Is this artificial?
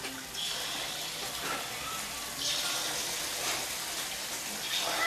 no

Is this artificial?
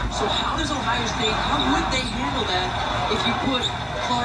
no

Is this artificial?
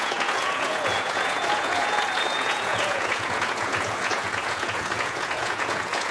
yes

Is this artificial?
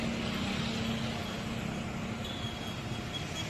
no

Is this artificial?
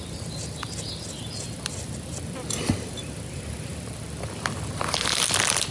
no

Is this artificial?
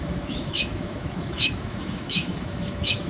yes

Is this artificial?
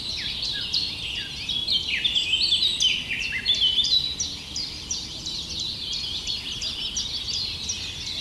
no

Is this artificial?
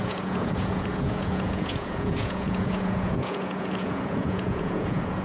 yes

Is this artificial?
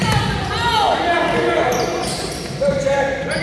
no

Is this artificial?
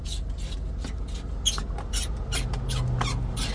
no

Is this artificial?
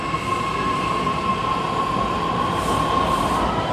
no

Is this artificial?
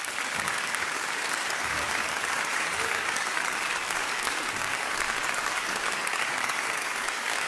yes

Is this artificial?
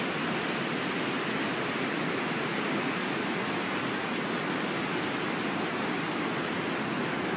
no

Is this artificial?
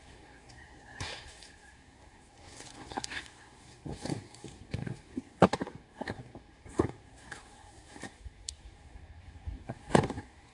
yes